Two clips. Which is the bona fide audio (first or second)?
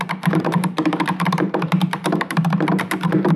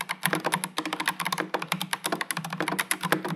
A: second